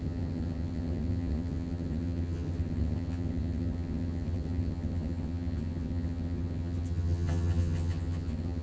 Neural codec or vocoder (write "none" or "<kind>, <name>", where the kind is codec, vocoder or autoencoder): vocoder, HiFi-GAN